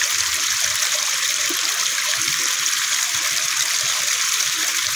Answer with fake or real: fake